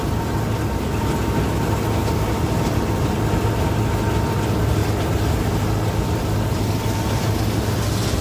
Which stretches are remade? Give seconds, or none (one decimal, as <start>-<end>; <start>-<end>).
none